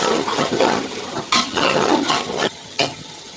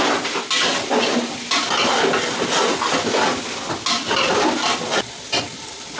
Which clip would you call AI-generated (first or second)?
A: first